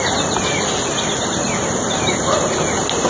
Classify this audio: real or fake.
real